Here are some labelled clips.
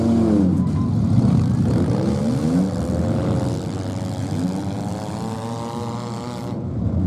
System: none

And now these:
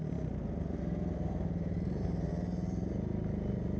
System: none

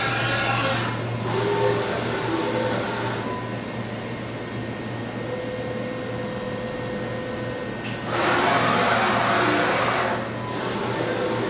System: none